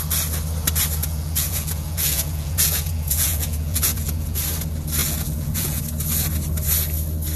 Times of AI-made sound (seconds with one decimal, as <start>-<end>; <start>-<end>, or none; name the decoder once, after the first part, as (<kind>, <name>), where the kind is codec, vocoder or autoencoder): 1.0-4.4 (vocoder, Vocos); 5.0-5.8

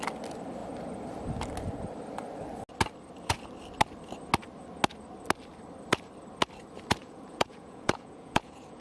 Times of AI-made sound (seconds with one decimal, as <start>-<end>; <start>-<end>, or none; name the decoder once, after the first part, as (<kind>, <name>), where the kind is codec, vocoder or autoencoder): 7.0-8.8 (vocoder, Vocos)

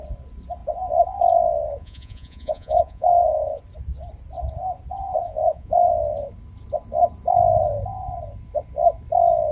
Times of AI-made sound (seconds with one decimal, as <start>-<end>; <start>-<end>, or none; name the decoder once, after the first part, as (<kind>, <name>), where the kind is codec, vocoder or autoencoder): 1.8-3.6 (vocoder, Vocos); 5.1-5.9

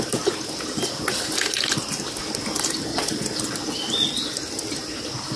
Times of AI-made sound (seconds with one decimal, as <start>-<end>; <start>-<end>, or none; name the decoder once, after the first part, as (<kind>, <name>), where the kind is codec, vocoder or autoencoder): 2.9-3.4 (vocoder, Vocos)

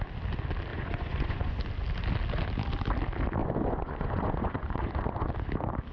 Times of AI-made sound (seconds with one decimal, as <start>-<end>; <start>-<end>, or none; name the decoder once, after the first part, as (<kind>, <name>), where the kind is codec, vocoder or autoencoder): 0.7-1.6 (vocoder, Vocos); 3.4-5.3

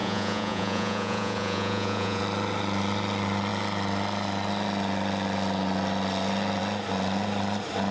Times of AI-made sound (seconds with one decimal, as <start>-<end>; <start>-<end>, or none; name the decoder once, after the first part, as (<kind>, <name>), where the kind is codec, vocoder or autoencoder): 0.0-2.2 (vocoder, Vocos)

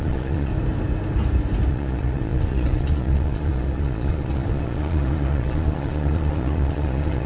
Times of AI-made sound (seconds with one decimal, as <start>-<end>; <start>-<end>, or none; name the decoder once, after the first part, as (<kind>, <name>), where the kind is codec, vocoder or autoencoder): 0.0-0.5 (vocoder, Vocos); 1.7-7.3

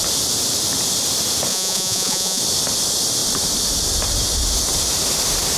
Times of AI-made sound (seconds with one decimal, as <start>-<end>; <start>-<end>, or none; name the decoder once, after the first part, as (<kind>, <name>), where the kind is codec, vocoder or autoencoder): 1.5-2.4 (vocoder, Vocos)